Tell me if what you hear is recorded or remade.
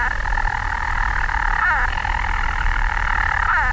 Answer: recorded